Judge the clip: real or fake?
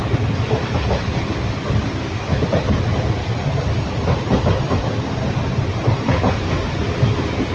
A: real